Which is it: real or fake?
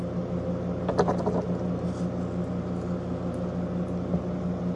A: real